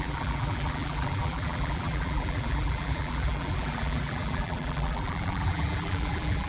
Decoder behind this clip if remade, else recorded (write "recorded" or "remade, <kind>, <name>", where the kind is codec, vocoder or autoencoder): remade, vocoder, BigVGAN v2